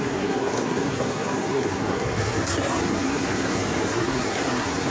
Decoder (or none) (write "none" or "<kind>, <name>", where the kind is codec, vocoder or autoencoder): codec, SNAC